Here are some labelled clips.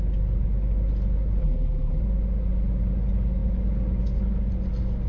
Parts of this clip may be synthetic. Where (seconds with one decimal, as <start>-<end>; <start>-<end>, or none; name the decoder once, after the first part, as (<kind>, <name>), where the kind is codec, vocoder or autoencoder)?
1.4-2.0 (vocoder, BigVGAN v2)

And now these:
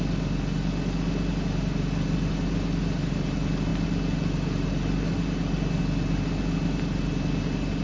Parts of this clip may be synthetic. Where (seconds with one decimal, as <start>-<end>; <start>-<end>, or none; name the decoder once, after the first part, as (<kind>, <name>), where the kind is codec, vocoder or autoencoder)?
none

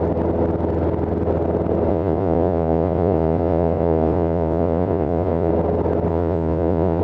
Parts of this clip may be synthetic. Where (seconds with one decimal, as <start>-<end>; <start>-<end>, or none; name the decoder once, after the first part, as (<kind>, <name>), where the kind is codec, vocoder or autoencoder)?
1.9-5.5 (vocoder, Vocos); 6.1-7.0